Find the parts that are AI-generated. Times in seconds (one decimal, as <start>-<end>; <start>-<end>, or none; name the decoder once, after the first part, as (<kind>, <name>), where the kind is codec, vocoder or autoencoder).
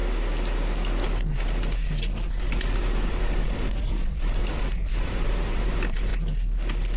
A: 3.1-6.1 (vocoder, BigVGAN v2)